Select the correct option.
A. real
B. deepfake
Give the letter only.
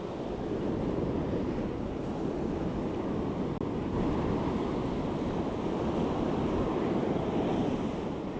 A